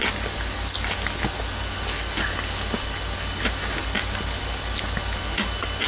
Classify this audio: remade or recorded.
recorded